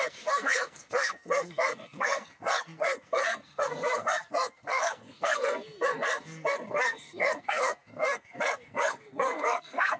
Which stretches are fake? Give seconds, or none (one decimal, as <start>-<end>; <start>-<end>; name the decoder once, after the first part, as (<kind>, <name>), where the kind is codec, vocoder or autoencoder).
0.0-10.0 (codec, SNAC)